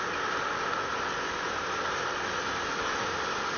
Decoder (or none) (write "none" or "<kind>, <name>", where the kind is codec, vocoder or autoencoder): none